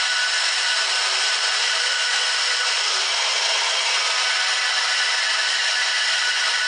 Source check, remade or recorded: recorded